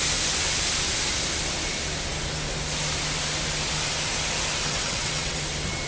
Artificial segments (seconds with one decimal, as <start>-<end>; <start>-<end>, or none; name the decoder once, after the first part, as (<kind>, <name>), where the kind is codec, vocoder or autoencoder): 4.6-5.4 (vocoder, WaveNeXt)